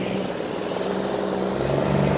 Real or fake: real